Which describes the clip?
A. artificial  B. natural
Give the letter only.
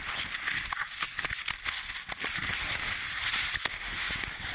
B